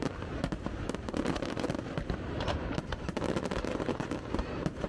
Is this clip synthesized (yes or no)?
yes